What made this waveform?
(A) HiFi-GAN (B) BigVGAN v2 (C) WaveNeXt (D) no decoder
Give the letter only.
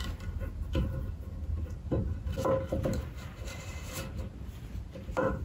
D